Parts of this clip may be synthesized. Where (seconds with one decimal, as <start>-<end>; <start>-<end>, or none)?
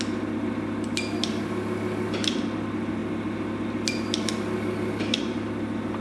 none